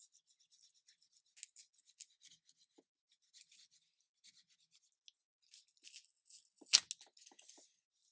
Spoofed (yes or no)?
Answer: no